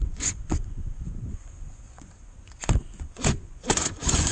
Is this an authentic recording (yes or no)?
no